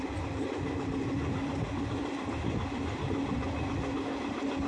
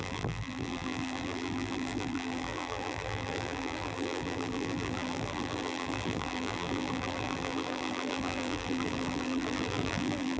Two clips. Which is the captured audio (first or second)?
first